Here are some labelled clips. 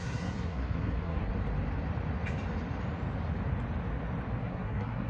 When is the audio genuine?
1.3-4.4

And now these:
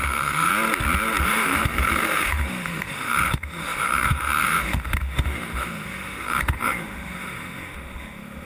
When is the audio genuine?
0.5-1.2

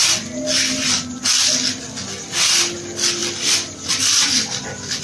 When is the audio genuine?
0.0-5.0

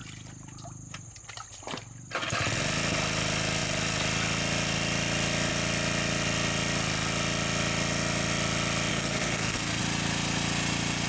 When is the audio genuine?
0.0-8.9; 9.8-11.1